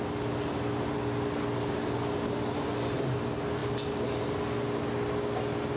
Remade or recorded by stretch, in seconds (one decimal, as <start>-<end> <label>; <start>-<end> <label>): 0.0-5.8 recorded